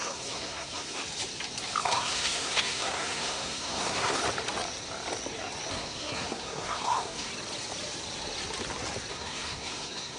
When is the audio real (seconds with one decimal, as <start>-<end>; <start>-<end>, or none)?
1.0-1.8; 4.2-5.7; 7.3-9.1